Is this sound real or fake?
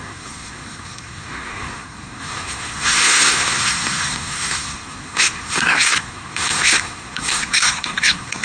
fake